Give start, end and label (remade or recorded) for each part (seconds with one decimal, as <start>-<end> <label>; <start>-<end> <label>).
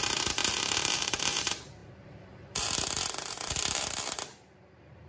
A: 0.0-5.1 remade